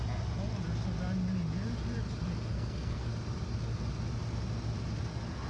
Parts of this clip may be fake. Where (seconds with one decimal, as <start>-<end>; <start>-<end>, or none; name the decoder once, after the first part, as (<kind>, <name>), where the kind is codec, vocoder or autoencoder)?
2.5-3.1 (codec, SNAC)